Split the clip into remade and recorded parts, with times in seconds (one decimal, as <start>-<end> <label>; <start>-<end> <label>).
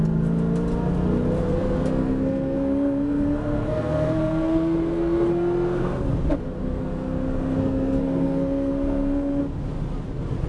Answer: 0.0-1.4 recorded; 1.4-6.1 remade; 6.1-6.6 recorded; 6.6-9.4 remade; 9.4-10.5 recorded